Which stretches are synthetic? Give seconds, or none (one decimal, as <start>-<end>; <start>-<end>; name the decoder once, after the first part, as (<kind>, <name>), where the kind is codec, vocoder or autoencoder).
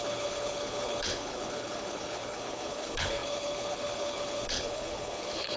0.0-5.6 (codec, HILCodec)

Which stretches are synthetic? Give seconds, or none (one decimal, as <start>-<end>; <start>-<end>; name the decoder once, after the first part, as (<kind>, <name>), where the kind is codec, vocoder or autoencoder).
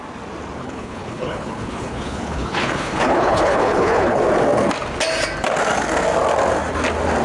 0.6-4.2 (codec, HILCodec)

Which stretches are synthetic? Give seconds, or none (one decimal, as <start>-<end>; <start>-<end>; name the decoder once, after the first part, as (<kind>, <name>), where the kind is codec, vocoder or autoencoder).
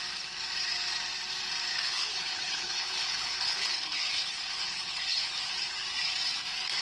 1.7-5.5 (codec, HILCodec)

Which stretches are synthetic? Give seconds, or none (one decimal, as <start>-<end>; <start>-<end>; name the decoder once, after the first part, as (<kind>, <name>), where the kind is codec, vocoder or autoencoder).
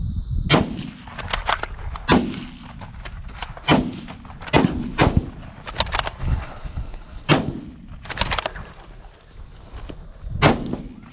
6.2-7.3 (codec, HILCodec)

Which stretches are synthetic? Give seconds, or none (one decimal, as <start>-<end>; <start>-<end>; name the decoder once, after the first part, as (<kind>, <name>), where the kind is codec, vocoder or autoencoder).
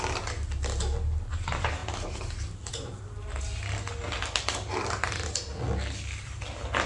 none